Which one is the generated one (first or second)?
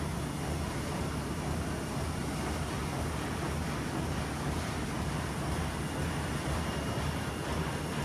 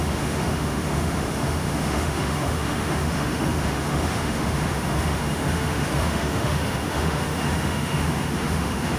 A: second